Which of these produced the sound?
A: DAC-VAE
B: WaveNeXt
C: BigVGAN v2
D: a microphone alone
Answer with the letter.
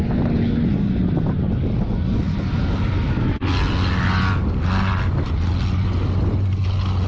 D